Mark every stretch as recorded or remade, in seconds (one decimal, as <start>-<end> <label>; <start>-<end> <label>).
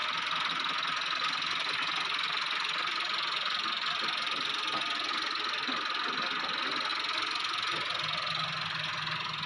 0.0-9.5 recorded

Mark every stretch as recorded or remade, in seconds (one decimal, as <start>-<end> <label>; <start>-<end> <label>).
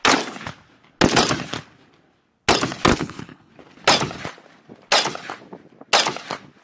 0.0-2.9 recorded; 2.9-3.5 remade; 3.5-6.6 recorded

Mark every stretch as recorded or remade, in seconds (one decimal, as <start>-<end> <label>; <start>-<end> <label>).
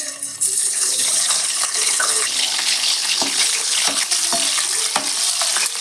0.0-0.6 recorded; 0.6-4.1 remade; 4.1-5.8 recorded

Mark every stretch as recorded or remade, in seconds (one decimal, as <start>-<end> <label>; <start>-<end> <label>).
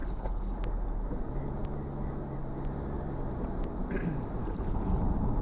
0.0-0.6 remade; 0.6-4.4 recorded; 4.4-5.0 remade; 5.0-5.4 recorded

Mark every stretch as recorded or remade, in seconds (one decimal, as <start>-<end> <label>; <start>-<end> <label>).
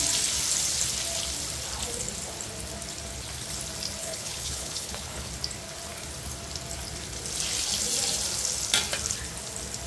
0.0-4.0 recorded; 4.0-5.3 remade; 5.3-9.9 recorded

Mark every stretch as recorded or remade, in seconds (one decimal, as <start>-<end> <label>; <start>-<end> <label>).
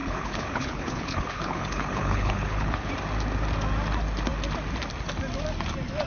0.0-2.9 remade; 2.9-6.1 recorded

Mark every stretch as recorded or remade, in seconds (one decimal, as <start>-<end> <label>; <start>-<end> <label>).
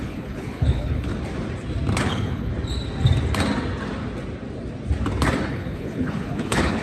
0.0-1.1 remade; 1.1-2.0 recorded; 2.0-2.5 remade; 2.5-5.5 recorded; 5.5-6.8 remade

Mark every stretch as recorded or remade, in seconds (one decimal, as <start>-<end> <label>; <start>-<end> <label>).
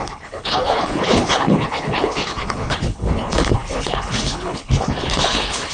0.0-5.7 remade